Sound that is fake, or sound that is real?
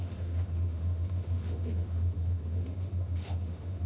fake